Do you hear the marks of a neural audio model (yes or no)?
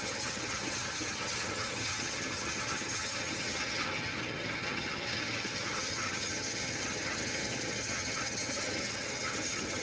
yes